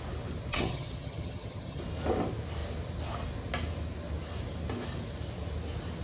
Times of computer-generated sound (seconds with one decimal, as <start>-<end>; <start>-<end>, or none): 0.5-1.8